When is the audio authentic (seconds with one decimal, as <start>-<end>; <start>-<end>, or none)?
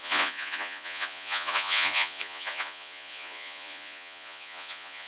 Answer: none